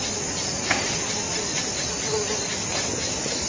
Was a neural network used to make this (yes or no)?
no